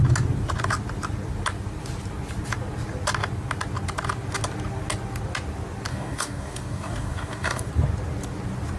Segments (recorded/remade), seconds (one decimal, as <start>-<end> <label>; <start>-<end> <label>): 0.0-5.9 recorded; 5.9-7.7 remade; 7.7-8.8 recorded